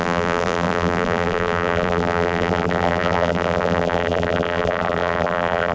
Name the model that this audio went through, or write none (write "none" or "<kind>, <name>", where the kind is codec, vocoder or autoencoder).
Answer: vocoder, BigVGAN v2